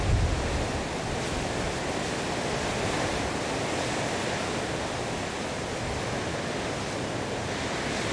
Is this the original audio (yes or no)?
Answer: yes